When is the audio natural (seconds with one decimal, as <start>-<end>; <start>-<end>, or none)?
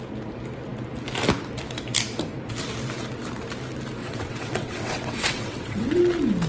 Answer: 0.0-4.0; 6.0-6.5